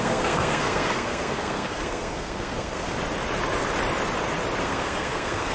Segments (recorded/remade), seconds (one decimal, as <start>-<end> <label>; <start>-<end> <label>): 0.0-2.9 remade; 2.9-4.6 recorded; 4.6-5.5 remade